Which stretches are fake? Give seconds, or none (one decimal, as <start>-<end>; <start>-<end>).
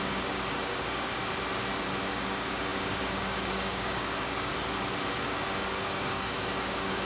0.0-1.2; 2.1-4.5; 5.2-7.1